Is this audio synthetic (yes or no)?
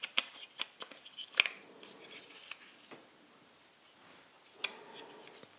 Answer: no